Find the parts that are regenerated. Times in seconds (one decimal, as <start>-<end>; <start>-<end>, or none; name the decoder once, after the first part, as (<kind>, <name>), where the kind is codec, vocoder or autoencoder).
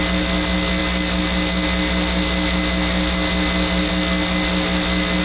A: none